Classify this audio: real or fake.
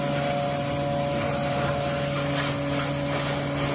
real